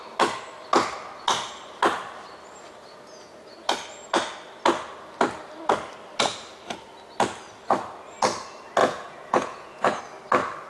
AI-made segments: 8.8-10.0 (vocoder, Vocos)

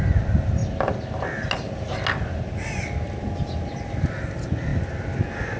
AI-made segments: none

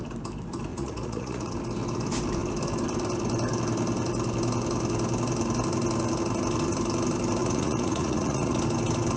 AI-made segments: 0.7-1.5 (vocoder, Vocos); 7.4-8.6

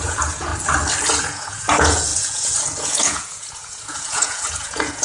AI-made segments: 0.0-0.5 (vocoder, Vocos); 1.2-5.0

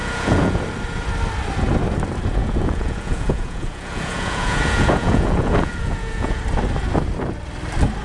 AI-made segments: 0.0-0.6 (vocoder, Vocos); 2.4-6.4

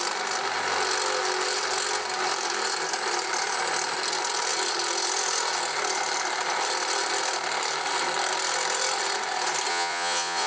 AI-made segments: 9.7-10.5 (vocoder, Vocos)

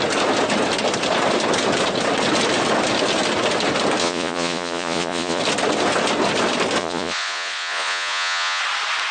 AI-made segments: 4.0-5.4 (vocoder, Vocos); 6.8-8.6